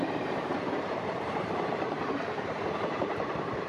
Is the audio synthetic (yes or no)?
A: yes